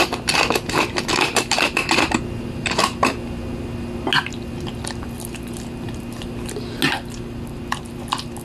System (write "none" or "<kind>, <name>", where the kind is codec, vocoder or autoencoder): none